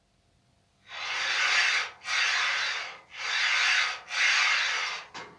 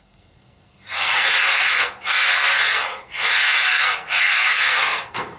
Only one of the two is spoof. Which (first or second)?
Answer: second